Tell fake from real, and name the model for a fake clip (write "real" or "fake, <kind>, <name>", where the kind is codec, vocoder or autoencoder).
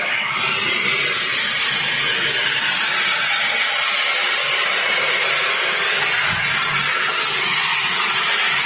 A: real